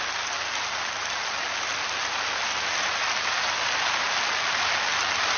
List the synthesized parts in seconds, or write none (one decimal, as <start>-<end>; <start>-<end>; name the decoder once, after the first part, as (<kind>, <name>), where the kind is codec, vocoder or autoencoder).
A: none

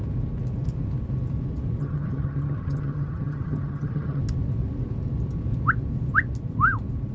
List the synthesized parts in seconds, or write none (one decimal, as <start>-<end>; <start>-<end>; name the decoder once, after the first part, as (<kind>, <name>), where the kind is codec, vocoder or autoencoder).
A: 1.8-4.2 (vocoder, HiFi-GAN)

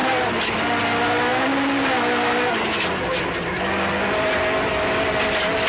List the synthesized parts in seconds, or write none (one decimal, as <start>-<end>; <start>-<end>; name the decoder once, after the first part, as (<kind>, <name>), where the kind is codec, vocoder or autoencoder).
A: none

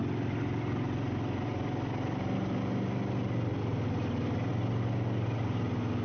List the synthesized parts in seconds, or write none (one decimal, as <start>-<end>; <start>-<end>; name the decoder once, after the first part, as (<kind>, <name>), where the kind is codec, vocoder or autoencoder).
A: none

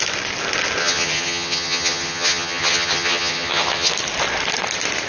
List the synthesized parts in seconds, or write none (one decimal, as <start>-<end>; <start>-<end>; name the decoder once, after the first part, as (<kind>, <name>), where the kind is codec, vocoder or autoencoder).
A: 0.8-3.9 (vocoder, HiFi-GAN)

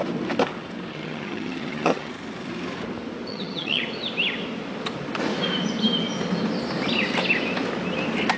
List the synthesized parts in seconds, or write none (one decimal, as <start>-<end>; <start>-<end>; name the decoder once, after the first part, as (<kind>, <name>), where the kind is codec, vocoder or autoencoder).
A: 0.9-2.1 (vocoder, HiFi-GAN); 3.3-3.8

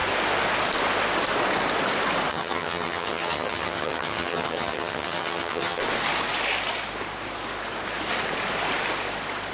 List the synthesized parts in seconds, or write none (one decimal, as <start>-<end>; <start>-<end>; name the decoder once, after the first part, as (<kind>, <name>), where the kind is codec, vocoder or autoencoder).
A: 2.3-5.8 (vocoder, HiFi-GAN)

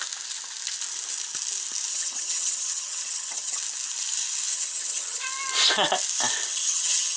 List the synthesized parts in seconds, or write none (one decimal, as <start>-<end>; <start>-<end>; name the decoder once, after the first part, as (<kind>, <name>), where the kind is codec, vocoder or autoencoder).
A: 1.9-3.6 (vocoder, HiFi-GAN); 4.5-5.2; 6.5-7.2